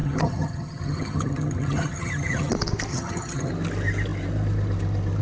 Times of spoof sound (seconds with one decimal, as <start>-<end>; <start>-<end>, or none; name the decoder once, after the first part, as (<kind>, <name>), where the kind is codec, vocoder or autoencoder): 0.0-2.5 (vocoder, HiFi-GAN); 2.9-3.5